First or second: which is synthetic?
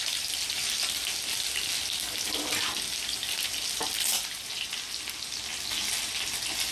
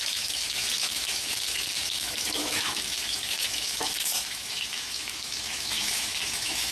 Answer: second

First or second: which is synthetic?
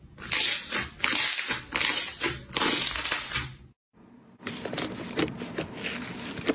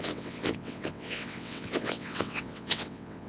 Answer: second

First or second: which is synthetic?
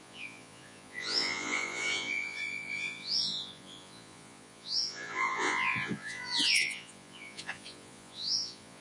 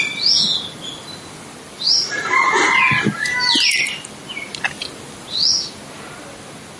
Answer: first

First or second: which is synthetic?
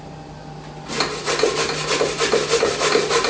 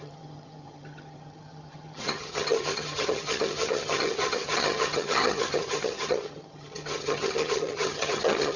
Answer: second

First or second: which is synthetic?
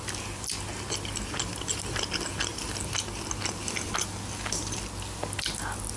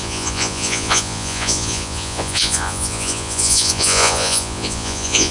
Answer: second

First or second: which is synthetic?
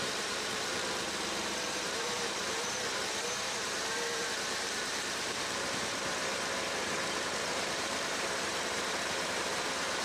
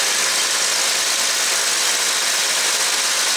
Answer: first